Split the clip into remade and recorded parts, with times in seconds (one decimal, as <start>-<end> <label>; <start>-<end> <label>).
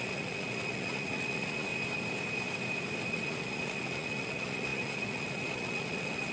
0.0-1.7 remade; 1.7-3.1 recorded; 3.1-6.3 remade